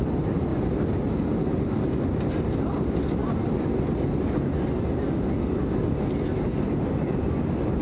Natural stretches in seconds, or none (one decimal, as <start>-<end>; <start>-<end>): 0.0-7.8